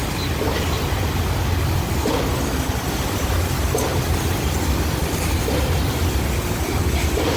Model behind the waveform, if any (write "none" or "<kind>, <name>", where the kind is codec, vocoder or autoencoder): none